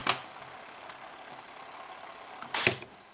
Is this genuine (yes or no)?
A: yes